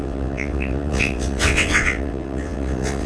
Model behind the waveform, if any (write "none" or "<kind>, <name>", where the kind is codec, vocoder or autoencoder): vocoder, WaveNeXt